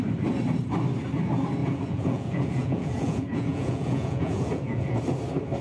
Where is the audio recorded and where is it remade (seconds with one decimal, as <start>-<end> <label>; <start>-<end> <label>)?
0.0-1.6 recorded; 1.6-5.0 remade; 5.0-5.6 recorded